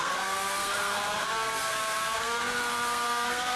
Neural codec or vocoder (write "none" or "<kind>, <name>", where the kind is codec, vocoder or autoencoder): codec, SNAC